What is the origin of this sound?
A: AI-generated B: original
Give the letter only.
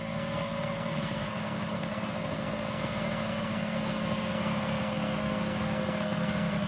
A